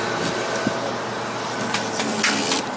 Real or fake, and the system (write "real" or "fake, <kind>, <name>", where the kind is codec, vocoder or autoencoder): real